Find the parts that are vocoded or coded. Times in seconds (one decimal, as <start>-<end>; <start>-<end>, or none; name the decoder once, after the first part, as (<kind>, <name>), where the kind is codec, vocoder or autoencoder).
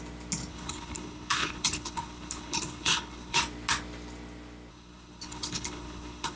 0.5-3.4 (codec, HILCodec); 4.7-6.4